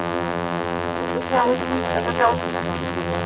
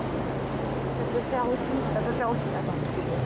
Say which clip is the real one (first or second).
second